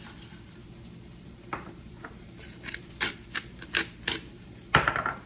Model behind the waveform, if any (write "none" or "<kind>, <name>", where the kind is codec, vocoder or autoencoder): vocoder, BigVGAN v2